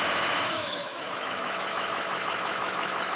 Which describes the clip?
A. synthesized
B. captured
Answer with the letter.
A